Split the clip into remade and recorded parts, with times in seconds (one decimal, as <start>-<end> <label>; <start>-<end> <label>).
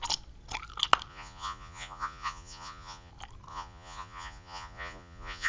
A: 0.0-1.1 recorded; 1.1-3.1 remade; 3.1-3.5 recorded; 3.5-5.5 remade